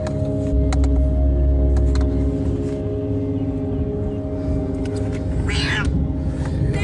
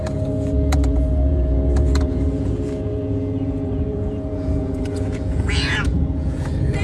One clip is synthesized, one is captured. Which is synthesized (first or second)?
second